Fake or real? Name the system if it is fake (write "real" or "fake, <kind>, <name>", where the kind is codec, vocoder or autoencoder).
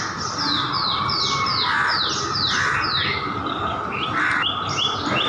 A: real